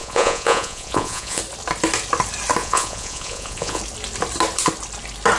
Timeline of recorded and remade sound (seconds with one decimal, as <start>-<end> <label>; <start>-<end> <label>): 0.0-1.4 remade; 1.4-2.6 recorded; 2.6-3.8 remade; 3.8-5.4 recorded